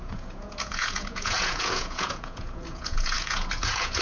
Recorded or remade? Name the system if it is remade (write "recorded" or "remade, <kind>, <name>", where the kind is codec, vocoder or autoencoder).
remade, vocoder, Vocos